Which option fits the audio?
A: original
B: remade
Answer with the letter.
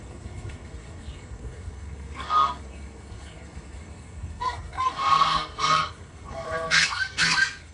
B